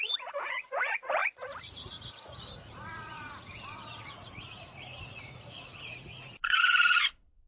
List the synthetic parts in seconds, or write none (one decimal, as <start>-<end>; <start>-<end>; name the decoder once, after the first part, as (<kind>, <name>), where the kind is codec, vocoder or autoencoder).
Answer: 0.0-7.5 (vocoder, Vocos)